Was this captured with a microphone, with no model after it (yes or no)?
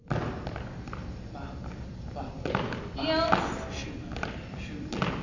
yes